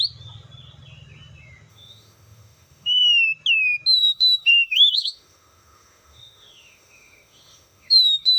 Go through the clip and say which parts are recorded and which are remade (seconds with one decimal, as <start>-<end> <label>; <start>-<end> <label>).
0.0-1.7 recorded; 1.7-3.1 remade; 3.1-4.0 recorded; 4.0-8.4 remade